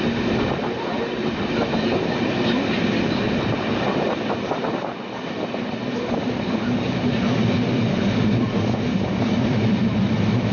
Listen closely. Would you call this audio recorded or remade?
recorded